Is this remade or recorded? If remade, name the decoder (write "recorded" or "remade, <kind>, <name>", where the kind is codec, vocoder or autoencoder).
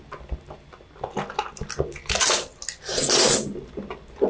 recorded